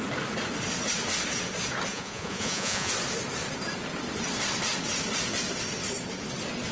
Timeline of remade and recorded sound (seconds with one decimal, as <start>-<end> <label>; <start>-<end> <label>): 0.0-1.9 recorded; 1.9-2.9 remade; 2.9-6.7 recorded